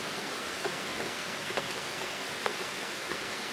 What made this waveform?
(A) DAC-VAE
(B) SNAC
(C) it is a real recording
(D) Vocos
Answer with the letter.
B